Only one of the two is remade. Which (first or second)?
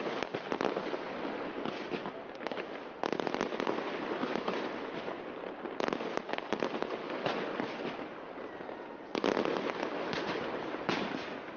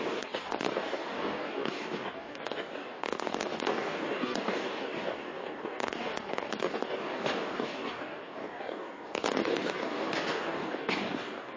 second